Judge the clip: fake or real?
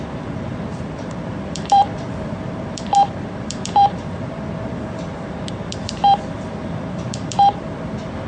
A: fake